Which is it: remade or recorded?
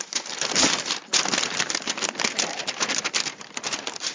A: recorded